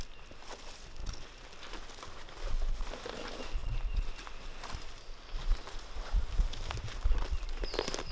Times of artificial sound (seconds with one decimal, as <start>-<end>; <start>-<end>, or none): none